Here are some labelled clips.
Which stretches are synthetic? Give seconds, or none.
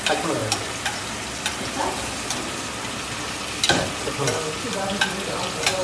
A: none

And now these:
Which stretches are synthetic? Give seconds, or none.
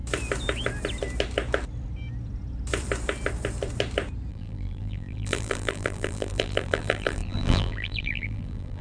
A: 4.3-8.8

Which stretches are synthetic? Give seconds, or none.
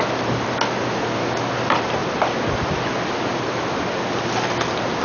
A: none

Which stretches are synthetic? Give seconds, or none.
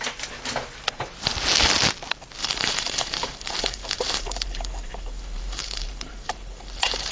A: 2.4-7.1